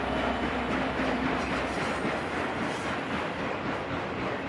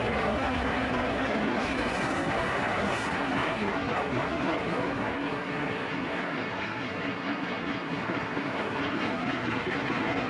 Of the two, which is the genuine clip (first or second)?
first